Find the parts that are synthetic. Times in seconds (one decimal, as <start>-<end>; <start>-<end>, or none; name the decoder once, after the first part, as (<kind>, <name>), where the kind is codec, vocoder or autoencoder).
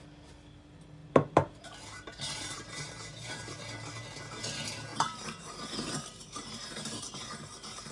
1.0-3.6 (vocoder, BigVGAN v2); 4.9-5.4; 6.2-7.3